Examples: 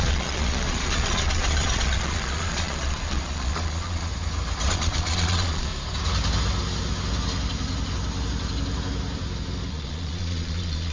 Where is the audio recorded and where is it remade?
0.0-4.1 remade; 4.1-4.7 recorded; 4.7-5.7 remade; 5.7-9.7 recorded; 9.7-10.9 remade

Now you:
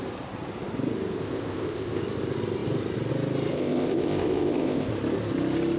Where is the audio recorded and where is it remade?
0.0-1.2 recorded; 1.2-2.0 remade; 2.0-3.5 recorded; 3.5-4.9 remade; 4.9-5.8 recorded